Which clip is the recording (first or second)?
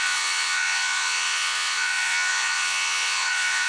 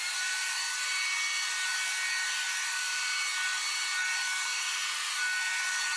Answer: second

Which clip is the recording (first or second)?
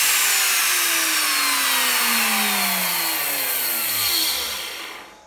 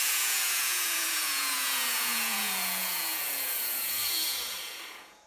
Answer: first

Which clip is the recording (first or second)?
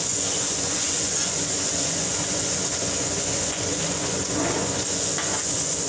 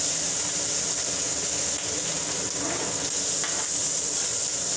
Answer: second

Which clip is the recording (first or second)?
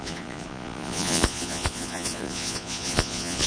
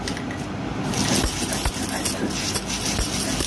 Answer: second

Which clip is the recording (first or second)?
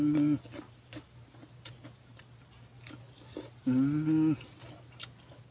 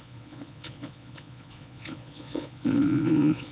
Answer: first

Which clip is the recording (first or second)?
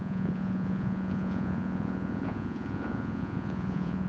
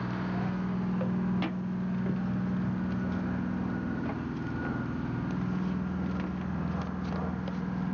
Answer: second